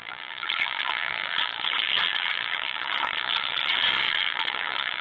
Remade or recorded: remade